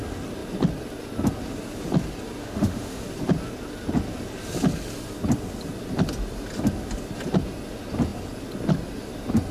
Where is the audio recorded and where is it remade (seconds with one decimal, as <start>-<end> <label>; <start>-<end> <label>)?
0.0-2.4 recorded; 2.4-3.0 remade; 3.0-9.5 recorded